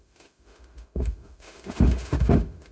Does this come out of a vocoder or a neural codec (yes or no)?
yes